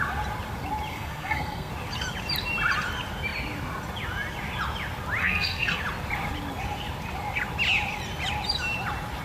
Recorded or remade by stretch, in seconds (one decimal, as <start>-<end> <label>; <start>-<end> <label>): 0.0-0.9 recorded; 0.9-1.7 remade; 1.7-5.2 recorded; 5.2-5.8 remade; 5.8-9.2 recorded